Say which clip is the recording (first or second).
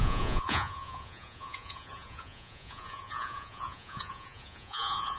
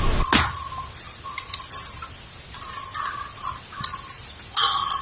second